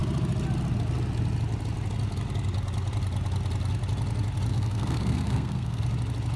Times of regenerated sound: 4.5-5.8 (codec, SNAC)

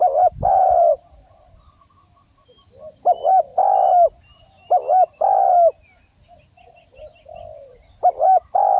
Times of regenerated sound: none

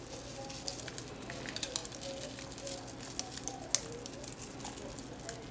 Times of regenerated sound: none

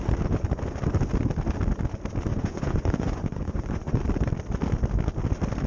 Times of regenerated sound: 2.3-4.0 (vocoder, Vocos)

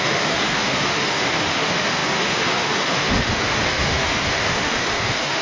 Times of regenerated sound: 0.0-5.4 (autoencoder, DAC-VAE)

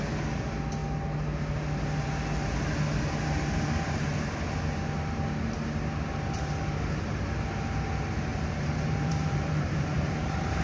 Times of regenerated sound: 8.3-10.6 (vocoder, BigVGAN v2)

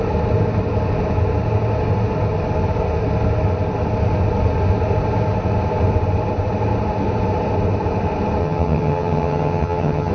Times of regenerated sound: 8.4-10.1 (vocoder, HiFi-GAN)

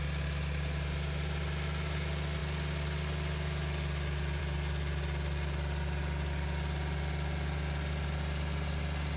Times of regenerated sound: none